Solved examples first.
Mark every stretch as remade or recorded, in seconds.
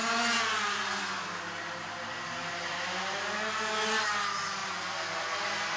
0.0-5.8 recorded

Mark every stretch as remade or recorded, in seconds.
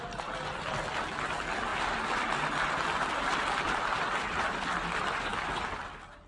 0.0-6.3 recorded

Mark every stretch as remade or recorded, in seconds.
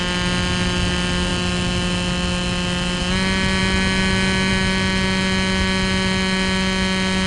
0.0-7.3 recorded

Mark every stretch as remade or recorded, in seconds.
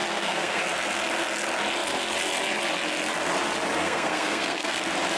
0.0-0.6 remade; 0.6-3.8 recorded; 3.8-4.8 remade; 4.8-5.2 recorded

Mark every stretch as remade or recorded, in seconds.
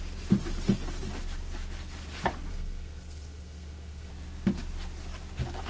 0.0-2.5 recorded; 2.5-4.1 remade; 4.1-5.7 recorded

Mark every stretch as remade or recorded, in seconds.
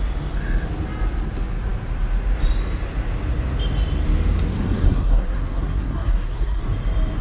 0.0-4.5 recorded; 4.5-6.6 remade; 6.6-7.2 recorded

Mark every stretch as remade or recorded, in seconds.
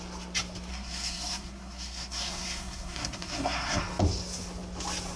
0.0-0.7 recorded; 0.7-3.8 remade; 3.8-5.2 recorded